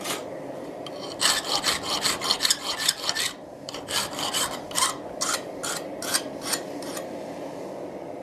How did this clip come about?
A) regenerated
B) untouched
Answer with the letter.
A